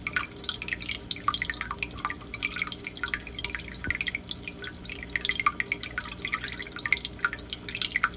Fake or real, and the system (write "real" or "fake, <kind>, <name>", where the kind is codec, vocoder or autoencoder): real